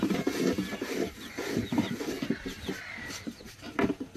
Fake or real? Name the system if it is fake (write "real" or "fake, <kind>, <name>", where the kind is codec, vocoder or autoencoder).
real